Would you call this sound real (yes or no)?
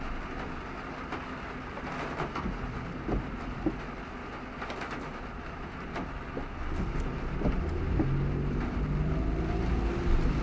yes